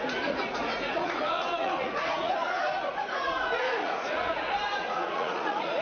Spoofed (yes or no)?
yes